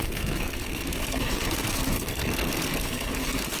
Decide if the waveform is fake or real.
fake